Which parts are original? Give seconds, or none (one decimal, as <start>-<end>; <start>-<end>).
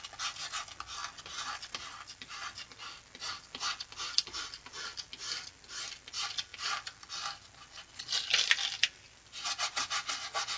0.0-10.6